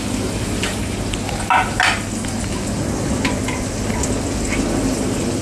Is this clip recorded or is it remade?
recorded